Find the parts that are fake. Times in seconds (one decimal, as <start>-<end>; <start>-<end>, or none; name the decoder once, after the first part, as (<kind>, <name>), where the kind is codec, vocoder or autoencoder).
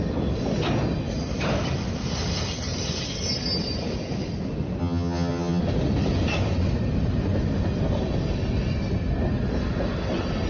4.8-5.6 (vocoder, HiFi-GAN)